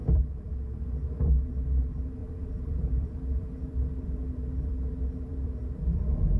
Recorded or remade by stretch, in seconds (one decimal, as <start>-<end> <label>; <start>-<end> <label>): 0.0-0.5 remade; 0.5-2.2 recorded; 2.2-6.0 remade; 6.0-6.4 recorded